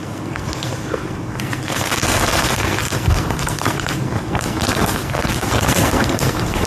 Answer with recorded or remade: remade